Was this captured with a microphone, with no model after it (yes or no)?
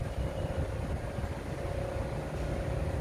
yes